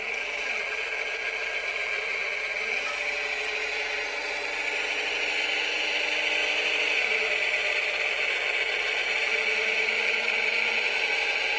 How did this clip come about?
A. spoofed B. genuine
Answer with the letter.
B